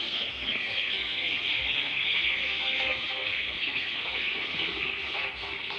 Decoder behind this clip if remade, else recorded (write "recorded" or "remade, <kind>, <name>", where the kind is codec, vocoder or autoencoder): remade, codec, SNAC